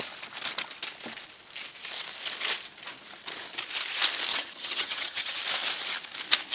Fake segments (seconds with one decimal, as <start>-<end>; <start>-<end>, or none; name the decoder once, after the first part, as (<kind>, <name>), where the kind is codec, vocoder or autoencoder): 4.3-5.4 (vocoder, HiFi-GAN)